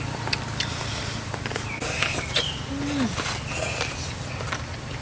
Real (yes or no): yes